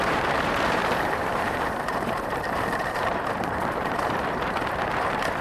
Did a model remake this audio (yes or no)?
yes